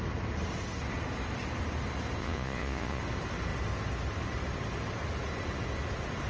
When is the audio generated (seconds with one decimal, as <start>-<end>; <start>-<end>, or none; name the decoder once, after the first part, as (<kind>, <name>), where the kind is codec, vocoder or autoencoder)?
2.2-3.0 (vocoder, Vocos)